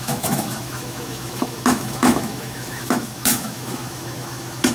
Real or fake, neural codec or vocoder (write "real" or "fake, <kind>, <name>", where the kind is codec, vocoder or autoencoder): fake, autoencoder, DAC-VAE